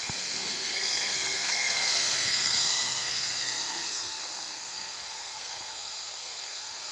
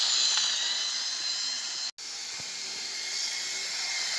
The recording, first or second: second